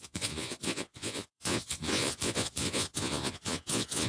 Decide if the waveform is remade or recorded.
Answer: remade